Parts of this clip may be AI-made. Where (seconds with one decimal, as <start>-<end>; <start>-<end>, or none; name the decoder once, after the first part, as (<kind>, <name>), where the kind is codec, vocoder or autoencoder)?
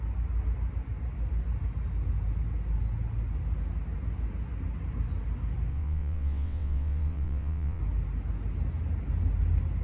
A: 5.7-7.8 (vocoder, WaveNeXt)